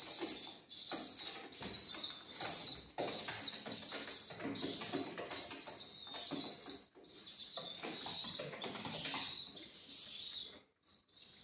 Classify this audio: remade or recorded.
recorded